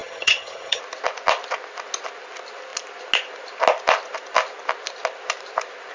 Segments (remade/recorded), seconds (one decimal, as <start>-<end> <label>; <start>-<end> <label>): 0.0-0.8 remade; 0.8-5.9 recorded